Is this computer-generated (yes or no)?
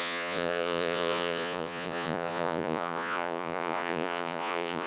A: yes